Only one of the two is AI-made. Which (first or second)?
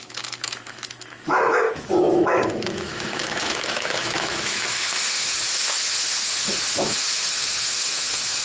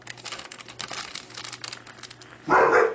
first